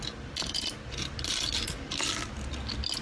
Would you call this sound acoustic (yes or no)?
yes